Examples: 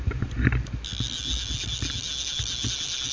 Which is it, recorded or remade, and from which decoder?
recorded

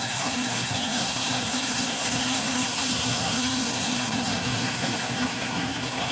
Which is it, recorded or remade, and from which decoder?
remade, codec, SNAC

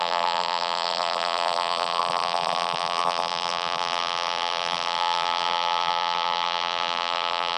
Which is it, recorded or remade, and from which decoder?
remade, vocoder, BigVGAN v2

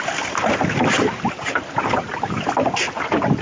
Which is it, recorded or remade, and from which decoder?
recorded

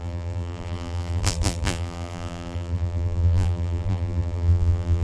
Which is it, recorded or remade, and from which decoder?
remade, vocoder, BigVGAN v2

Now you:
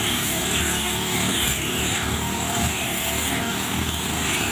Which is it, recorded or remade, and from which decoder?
remade, codec, DAC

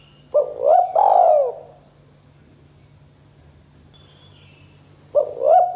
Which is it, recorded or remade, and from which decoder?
recorded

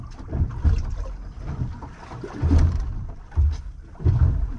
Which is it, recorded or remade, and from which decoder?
recorded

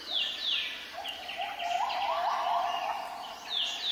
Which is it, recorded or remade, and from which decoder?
recorded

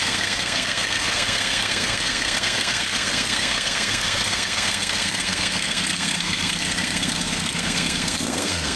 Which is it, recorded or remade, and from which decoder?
remade, codec, SNAC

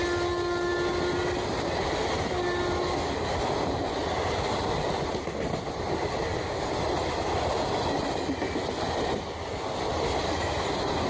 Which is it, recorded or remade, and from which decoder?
recorded